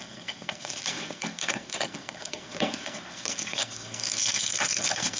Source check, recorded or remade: remade